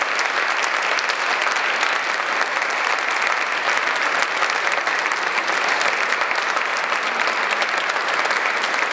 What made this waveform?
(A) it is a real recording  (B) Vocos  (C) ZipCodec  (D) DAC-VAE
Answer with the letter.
A